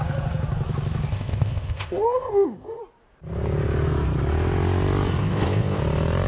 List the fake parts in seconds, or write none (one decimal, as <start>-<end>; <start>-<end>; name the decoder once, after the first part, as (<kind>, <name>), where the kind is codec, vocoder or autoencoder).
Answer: 1.1-2.8 (codec, ZipCodec); 5.2-5.8